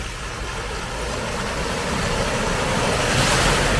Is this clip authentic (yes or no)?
yes